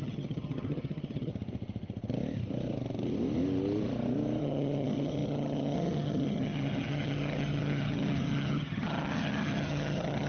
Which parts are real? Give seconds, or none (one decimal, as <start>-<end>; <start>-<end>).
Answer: 1.3-4.4